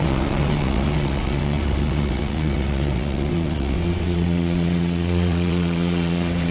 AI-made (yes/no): yes